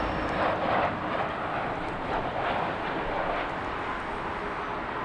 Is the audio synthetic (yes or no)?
no